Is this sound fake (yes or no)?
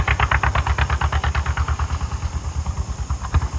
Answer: no